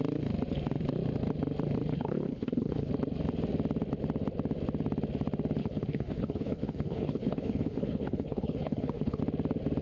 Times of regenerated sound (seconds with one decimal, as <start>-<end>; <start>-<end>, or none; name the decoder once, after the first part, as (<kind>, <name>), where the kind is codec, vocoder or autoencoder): 1.9-2.9 (codec, HILCodec); 5.6-9.2